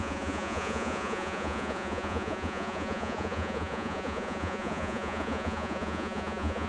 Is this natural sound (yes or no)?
no